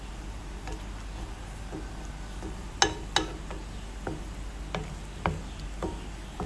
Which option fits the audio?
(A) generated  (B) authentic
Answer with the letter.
B